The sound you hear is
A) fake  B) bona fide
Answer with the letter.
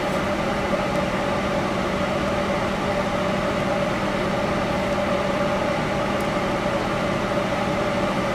B